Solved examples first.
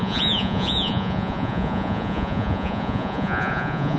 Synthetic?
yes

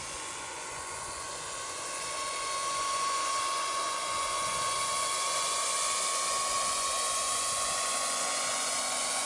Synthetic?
yes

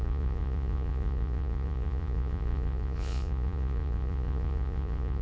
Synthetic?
yes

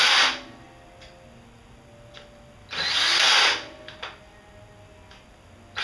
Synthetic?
no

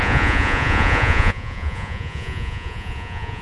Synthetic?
yes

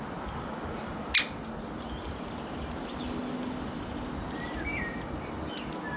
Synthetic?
no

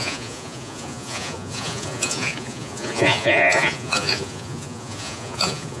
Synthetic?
yes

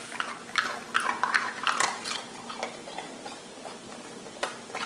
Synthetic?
no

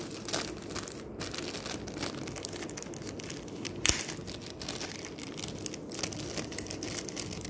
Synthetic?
no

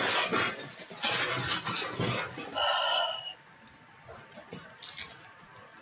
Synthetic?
no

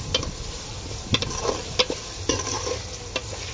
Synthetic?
no